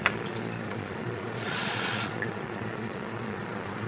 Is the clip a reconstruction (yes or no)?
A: yes